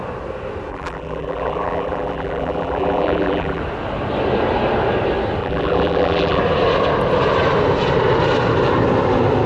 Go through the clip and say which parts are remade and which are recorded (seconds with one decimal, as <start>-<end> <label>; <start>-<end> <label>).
0.0-0.7 recorded; 0.7-3.6 remade; 3.6-5.4 recorded; 5.4-6.4 remade; 6.4-9.5 recorded